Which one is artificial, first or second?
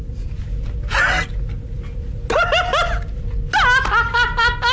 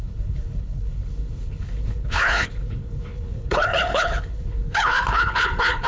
second